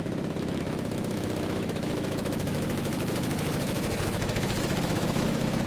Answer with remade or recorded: remade